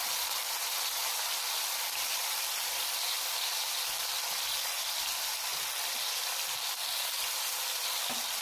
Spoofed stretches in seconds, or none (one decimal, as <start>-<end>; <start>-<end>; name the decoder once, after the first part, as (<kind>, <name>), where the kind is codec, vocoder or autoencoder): 1.0-3.3 (vocoder, BigVGAN v2); 5.5-6.2